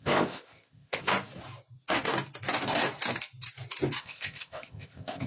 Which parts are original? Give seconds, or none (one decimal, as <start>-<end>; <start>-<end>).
1.1-4.0